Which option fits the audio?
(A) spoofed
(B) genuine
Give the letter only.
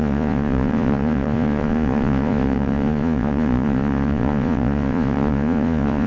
A